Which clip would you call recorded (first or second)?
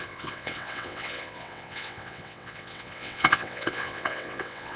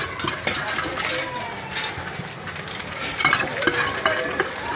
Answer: second